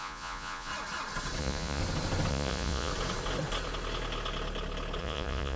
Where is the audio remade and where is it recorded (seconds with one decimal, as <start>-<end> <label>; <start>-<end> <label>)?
0.0-0.7 remade; 0.7-1.4 recorded; 1.4-1.8 remade; 1.8-2.3 recorded; 2.3-2.9 remade; 2.9-5.0 recorded; 5.0-5.6 remade